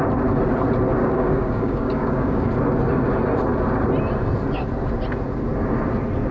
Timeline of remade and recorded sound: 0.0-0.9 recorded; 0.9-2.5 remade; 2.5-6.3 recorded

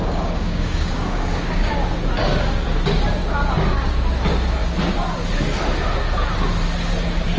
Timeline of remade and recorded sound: 0.0-1.7 remade; 1.7-3.2 recorded; 3.2-3.9 remade; 3.9-7.4 recorded

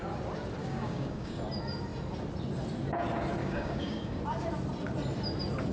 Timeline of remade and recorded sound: 0.0-0.6 recorded; 0.6-1.4 remade; 1.4-3.4 recorded; 3.4-4.2 remade; 4.2-5.7 recorded